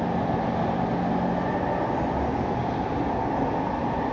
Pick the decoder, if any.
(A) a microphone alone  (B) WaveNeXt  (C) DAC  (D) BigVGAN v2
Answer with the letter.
A